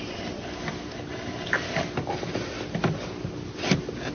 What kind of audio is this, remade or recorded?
recorded